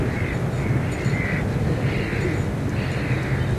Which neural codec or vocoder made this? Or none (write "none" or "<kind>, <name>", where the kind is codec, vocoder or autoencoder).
vocoder, BigVGAN v2